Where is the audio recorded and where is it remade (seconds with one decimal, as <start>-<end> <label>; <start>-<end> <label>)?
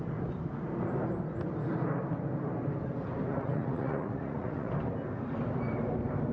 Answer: 0.0-3.3 recorded; 3.3-4.7 remade; 4.7-6.3 recorded